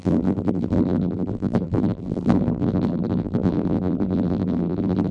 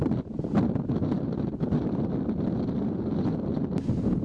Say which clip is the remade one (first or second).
first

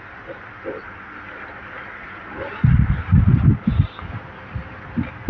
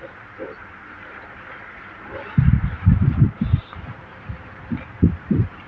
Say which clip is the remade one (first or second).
second